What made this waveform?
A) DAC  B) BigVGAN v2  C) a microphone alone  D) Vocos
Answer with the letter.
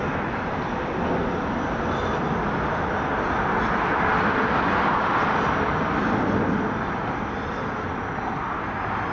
C